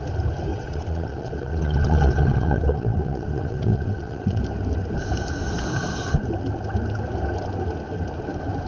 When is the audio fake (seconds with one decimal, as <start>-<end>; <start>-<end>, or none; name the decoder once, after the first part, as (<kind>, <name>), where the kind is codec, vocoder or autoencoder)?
0.5-4.4 (vocoder, WaveNeXt)